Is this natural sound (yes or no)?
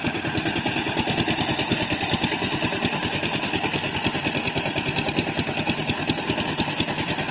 yes